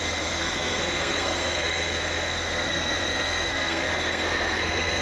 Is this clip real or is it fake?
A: fake